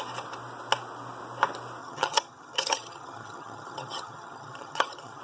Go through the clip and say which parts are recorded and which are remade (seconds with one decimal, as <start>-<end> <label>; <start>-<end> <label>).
0.0-1.8 recorded; 1.8-5.2 remade